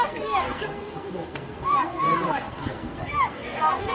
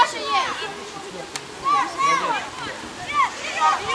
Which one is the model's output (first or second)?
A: first